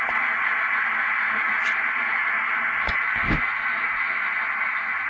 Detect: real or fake real